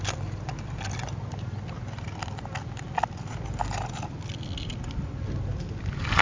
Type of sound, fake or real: real